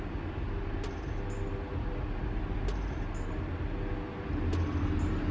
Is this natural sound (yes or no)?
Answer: yes